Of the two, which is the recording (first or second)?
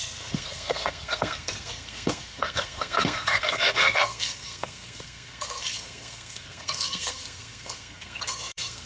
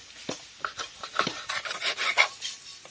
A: second